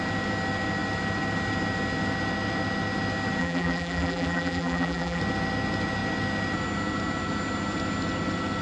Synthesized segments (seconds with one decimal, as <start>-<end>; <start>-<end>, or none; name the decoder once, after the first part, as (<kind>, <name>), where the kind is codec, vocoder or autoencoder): 3.4-5.2 (vocoder, BigVGAN v2)